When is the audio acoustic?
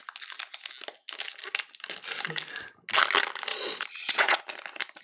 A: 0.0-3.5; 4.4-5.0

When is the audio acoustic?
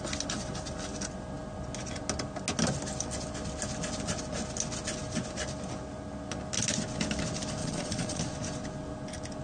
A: 0.0-7.6; 8.2-9.4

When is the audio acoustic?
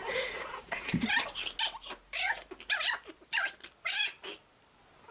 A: 1.1-5.1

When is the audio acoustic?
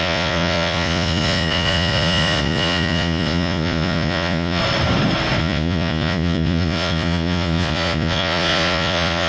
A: 4.6-5.4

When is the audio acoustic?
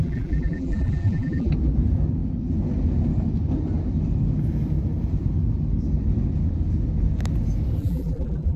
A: 1.5-7.8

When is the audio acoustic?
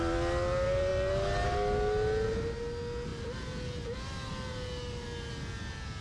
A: 0.0-6.0